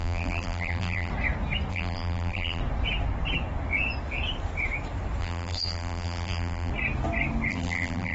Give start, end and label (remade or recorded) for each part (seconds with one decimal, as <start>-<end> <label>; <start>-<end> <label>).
0.0-1.1 remade; 1.1-1.7 recorded; 1.7-2.6 remade; 2.6-5.2 recorded; 5.2-6.7 remade; 6.7-7.5 recorded; 7.5-8.1 remade